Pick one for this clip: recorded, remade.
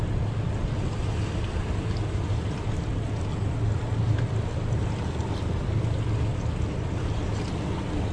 recorded